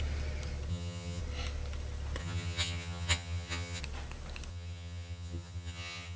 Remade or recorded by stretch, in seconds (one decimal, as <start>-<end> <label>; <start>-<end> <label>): 0.0-0.7 recorded; 0.7-1.2 remade; 1.2-2.2 recorded; 2.2-3.8 remade; 3.8-4.5 recorded; 4.5-6.2 remade